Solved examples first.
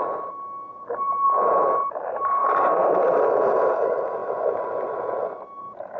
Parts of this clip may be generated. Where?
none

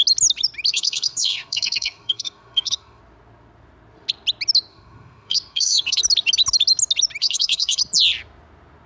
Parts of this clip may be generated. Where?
0.7-3.0 (codec, SNAC); 4.7-6.0; 7.2-7.8